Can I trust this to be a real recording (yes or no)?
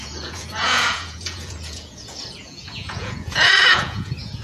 no